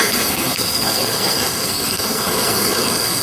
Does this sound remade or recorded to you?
remade